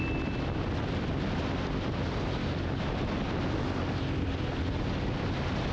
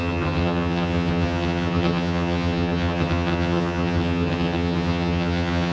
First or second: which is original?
first